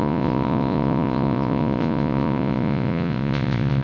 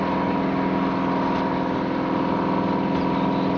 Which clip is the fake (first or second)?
first